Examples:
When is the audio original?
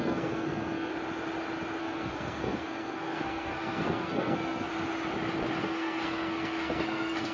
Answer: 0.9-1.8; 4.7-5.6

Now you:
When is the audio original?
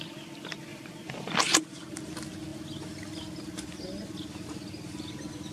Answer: 0.0-0.7; 2.1-5.5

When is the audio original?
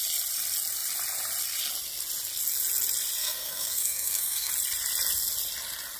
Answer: 0.0-3.2; 4.5-6.0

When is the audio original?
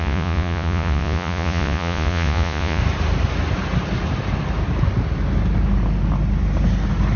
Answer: 2.8-7.2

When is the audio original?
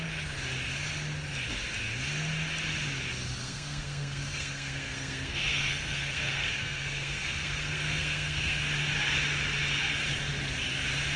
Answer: 0.0-3.4; 8.6-11.2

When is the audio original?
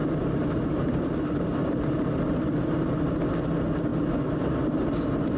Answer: 3.2-3.9